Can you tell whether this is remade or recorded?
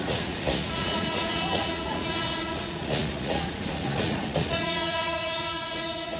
remade